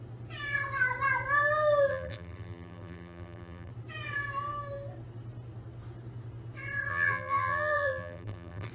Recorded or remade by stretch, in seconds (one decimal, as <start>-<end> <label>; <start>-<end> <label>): 0.0-1.9 recorded; 1.9-3.7 remade; 3.7-6.9 recorded; 6.9-8.7 remade